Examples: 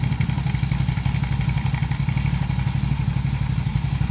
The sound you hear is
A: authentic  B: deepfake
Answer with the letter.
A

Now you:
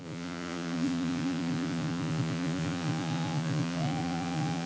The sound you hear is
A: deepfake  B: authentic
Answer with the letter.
A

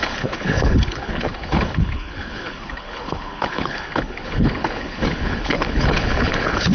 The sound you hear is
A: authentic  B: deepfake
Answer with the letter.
B